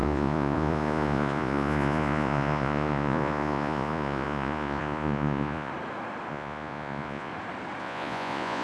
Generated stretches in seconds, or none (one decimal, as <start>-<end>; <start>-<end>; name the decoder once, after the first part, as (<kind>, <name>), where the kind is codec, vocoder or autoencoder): 0.0-5.7 (vocoder, Vocos); 6.3-7.3; 7.8-8.6